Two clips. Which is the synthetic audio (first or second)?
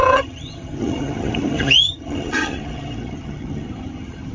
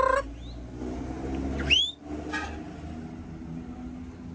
first